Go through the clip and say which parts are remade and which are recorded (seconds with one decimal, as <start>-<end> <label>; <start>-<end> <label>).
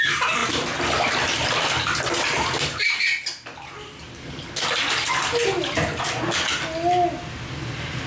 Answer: 0.0-8.1 recorded